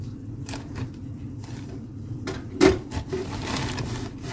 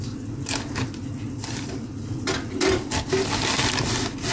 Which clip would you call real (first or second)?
second